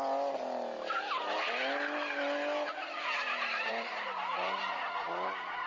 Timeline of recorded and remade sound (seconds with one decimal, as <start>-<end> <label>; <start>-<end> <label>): 0.0-5.7 recorded